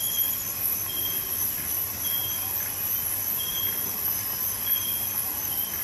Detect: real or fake real